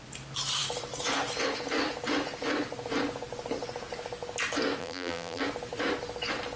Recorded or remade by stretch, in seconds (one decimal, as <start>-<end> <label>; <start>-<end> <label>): 0.0-4.8 recorded; 4.8-5.4 remade; 5.4-6.6 recorded